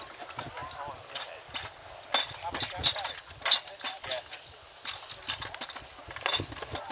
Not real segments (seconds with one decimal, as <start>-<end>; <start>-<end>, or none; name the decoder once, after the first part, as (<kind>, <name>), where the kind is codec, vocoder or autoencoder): none